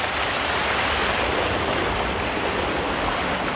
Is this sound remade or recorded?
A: recorded